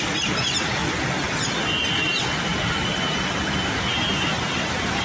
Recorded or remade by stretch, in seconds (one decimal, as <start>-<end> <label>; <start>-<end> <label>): 0.0-0.8 remade; 0.8-1.9 recorded; 1.9-2.5 remade; 2.5-3.3 recorded; 3.3-5.0 remade